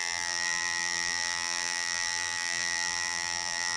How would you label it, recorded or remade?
remade